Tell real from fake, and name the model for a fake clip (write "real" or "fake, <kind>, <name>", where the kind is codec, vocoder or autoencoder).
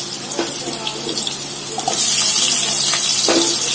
real